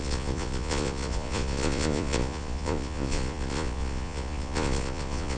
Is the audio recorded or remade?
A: remade